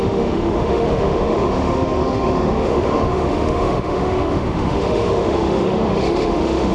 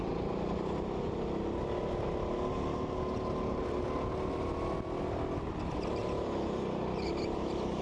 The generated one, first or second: first